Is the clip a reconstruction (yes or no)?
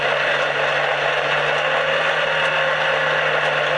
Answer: no